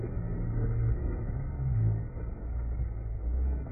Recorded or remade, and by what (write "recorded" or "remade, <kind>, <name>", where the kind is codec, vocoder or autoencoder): remade, codec, SNAC